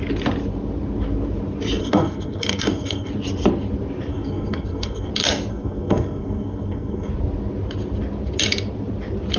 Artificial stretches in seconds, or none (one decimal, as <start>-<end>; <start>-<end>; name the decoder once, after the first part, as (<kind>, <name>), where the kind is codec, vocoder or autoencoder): 1.8-3.1 (codec, SNAC); 4.1-5.1; 5.5-7.1